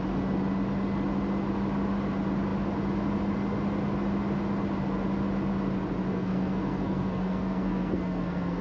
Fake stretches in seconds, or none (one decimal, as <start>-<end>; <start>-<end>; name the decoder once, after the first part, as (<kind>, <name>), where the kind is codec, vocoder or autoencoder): 6.1-8.6 (codec, SNAC)